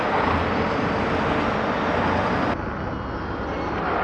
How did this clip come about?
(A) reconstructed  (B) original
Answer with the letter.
B